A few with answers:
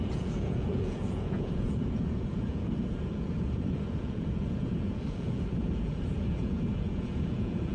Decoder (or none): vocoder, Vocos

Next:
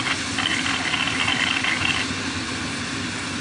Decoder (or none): none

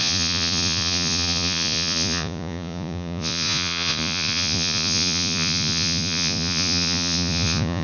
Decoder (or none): vocoder, Vocos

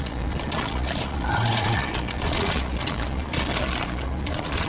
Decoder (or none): vocoder, Vocos